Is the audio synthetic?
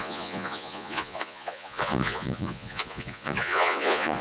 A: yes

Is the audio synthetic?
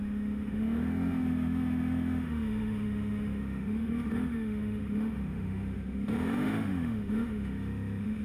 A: yes